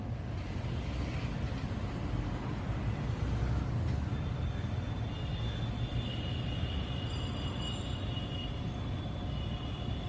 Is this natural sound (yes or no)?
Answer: yes